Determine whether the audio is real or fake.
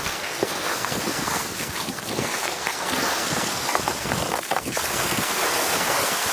fake